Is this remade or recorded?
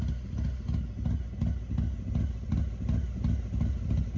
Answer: recorded